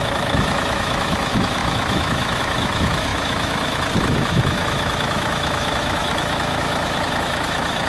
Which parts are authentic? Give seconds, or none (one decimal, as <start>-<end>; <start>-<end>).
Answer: none